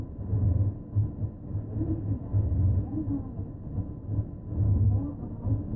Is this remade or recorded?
recorded